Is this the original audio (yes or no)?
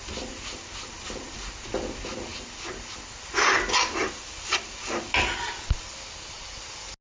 yes